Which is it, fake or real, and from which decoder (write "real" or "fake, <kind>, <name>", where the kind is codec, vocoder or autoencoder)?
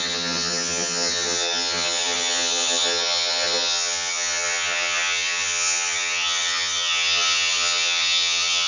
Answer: fake, vocoder, HiFi-GAN